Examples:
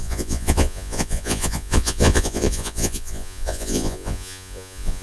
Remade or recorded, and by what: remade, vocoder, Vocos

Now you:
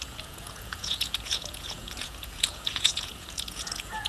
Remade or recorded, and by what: remade, vocoder, Vocos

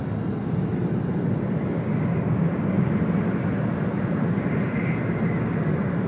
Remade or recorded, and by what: recorded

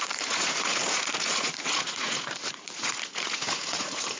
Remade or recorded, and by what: remade, vocoder, Vocos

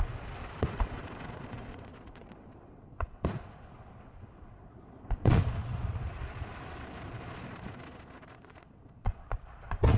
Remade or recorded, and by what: remade, vocoder, Vocos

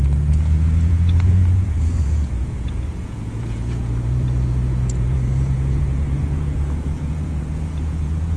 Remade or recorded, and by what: remade, vocoder, Vocos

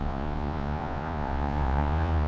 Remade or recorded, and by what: remade, vocoder, Vocos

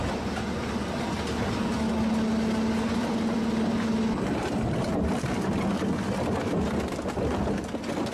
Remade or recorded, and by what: recorded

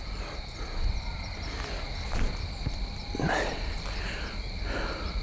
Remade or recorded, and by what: recorded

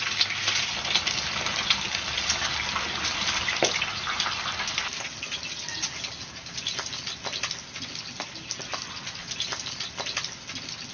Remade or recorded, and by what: recorded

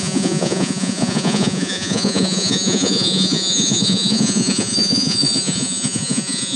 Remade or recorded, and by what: remade, vocoder, Vocos